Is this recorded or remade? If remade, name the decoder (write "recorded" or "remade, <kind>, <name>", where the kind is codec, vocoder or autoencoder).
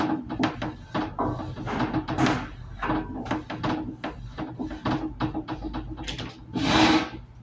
recorded